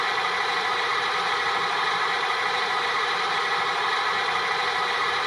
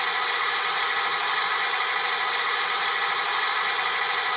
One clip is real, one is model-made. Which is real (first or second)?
second